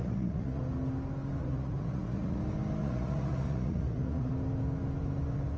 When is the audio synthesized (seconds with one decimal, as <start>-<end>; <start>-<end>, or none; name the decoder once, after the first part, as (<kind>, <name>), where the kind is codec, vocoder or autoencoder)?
0.0-0.6 (vocoder, Vocos); 1.4-2.4; 2.8-4.3